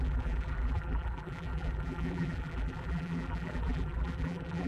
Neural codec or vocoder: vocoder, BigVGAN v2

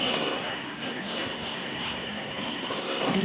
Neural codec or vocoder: codec, SNAC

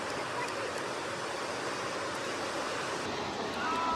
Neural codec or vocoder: none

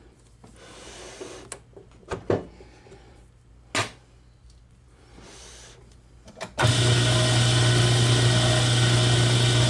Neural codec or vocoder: none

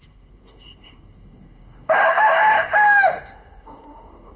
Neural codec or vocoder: autoencoder, DAC-VAE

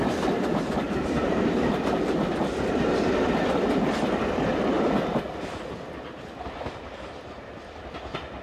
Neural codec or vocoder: none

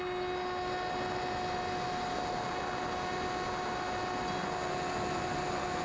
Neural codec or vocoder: none